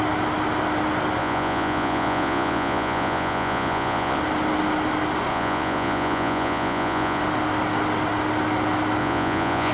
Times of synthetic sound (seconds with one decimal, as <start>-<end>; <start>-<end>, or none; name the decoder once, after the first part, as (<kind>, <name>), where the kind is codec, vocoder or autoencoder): 1.2-4.2 (vocoder, Vocos); 5.3-7.2; 9.0-9.7